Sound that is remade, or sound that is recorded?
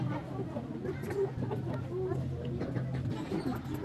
recorded